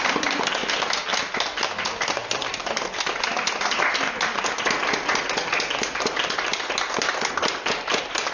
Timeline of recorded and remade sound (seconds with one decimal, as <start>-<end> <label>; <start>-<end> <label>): 0.0-8.3 recorded